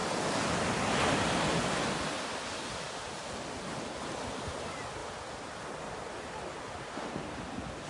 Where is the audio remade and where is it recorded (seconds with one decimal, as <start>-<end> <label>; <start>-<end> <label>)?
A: 0.0-7.9 recorded